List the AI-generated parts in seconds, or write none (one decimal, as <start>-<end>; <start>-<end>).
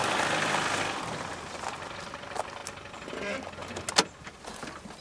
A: 0.8-2.6; 4.3-5.0